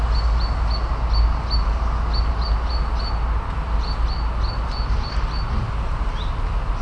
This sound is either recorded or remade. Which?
recorded